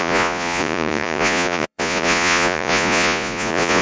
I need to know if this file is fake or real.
fake